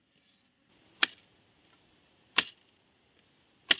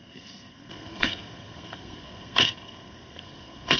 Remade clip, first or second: second